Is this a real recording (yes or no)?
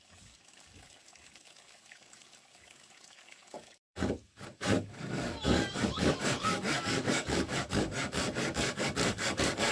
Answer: no